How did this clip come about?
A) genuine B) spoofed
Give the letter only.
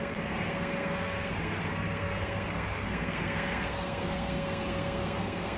B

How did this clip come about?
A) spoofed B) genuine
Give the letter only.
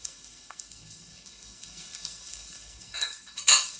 A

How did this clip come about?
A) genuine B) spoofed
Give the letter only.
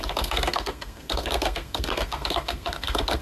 B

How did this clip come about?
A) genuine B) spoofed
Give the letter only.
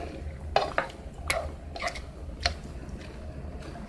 A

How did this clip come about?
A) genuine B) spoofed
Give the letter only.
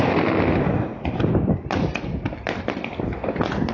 A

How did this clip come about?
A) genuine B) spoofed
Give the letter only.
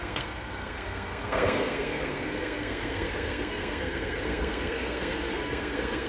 B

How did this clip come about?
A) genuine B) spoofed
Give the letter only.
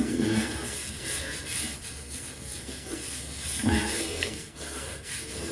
B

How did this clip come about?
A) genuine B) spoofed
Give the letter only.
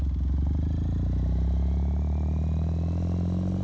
A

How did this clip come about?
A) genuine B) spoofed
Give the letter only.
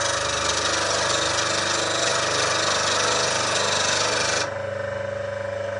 A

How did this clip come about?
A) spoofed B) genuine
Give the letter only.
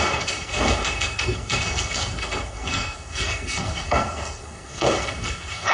A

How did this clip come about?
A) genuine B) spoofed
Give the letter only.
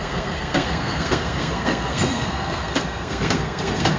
B